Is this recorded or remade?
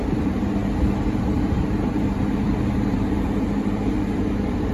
remade